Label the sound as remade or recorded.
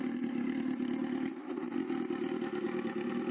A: recorded